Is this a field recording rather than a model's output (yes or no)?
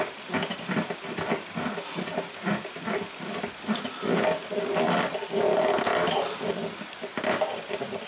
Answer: no